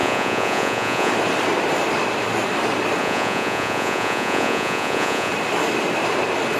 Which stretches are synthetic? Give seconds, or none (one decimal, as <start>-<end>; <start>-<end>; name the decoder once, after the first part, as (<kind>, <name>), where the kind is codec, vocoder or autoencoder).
0.0-1.1 (vocoder, Vocos); 3.0-5.3